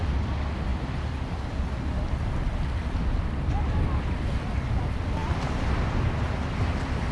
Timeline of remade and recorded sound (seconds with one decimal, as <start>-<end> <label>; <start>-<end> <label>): 0.0-7.1 recorded